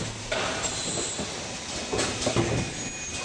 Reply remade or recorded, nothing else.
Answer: recorded